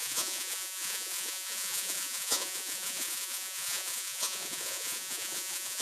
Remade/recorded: remade